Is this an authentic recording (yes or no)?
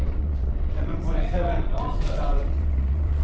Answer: no